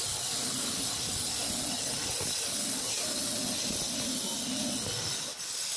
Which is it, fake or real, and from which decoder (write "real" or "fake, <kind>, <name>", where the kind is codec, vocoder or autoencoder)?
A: real